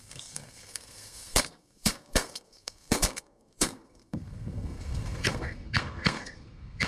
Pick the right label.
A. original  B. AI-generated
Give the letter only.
B